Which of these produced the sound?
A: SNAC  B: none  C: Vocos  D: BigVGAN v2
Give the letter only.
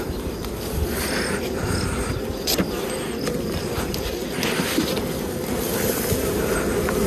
B